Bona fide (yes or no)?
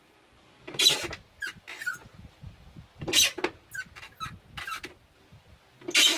yes